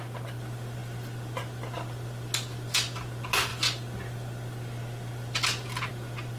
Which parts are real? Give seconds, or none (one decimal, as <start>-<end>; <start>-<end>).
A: 0.0-6.4